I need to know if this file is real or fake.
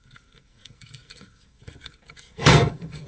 fake